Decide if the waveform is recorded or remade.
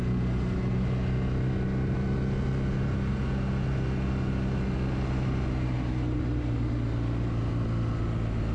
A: recorded